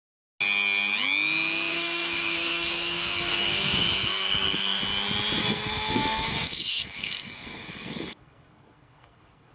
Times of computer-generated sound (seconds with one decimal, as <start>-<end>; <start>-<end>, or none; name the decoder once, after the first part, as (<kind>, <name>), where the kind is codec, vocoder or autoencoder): 1.7-4.8 (codec, SNAC); 5.4-9.5